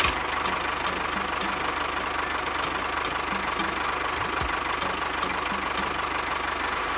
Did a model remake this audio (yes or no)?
no